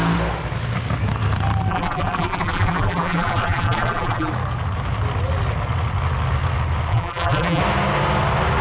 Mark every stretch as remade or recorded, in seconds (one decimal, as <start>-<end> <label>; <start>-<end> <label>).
0.0-1.7 recorded; 1.7-4.3 remade; 4.3-6.9 recorded; 6.9-7.6 remade; 7.6-8.6 recorded